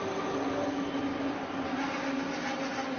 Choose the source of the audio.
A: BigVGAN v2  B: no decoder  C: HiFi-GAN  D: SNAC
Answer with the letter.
B